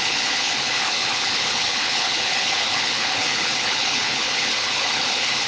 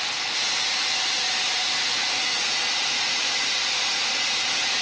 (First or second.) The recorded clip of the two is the second